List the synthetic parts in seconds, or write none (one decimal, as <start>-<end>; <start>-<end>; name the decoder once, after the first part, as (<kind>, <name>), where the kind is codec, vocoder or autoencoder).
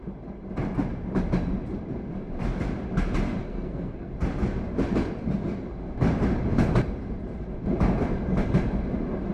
3.4-4.1 (codec, SNAC)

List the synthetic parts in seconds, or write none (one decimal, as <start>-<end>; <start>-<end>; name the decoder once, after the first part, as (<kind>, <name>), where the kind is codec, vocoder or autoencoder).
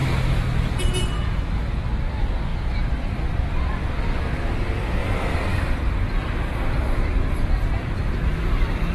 5.0-8.2 (vocoder, BigVGAN v2)